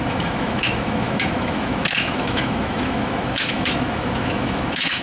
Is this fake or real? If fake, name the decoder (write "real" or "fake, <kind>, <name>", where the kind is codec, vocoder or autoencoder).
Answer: fake, autoencoder, DAC-VAE